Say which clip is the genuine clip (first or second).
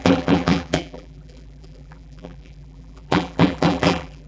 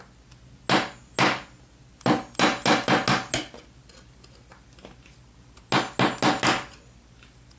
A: second